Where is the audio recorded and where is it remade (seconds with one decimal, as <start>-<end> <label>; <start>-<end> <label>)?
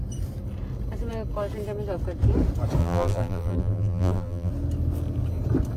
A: 0.0-2.8 recorded; 2.8-4.5 remade; 4.5-5.8 recorded